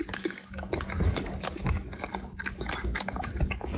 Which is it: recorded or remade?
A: remade